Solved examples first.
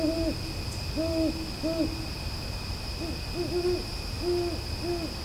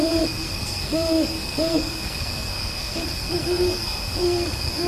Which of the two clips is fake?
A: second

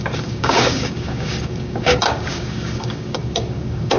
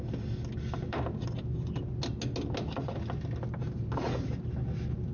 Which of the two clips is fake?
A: first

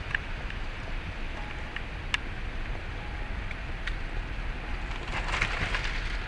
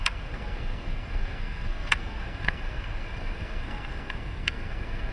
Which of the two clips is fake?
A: second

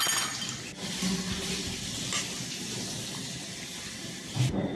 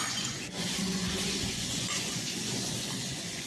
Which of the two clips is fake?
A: second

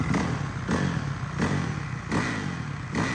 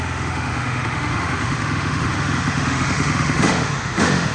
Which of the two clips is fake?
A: second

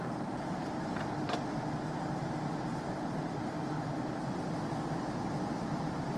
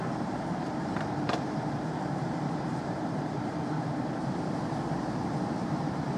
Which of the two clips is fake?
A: second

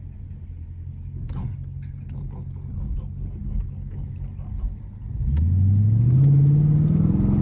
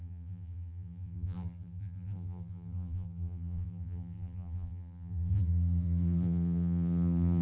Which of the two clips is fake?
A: second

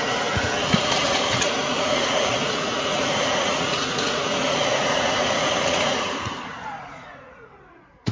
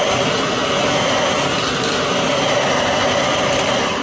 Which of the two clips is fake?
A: first